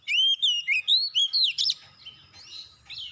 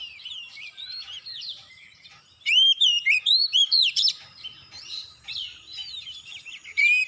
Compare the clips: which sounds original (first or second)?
first